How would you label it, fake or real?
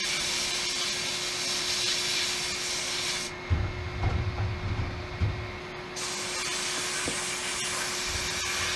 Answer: real